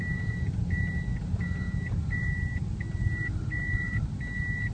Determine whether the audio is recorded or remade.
recorded